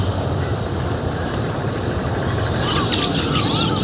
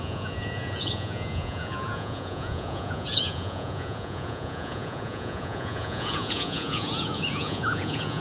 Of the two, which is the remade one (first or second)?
second